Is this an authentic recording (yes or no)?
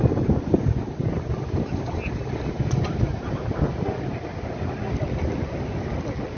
yes